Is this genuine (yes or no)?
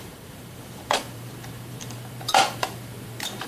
no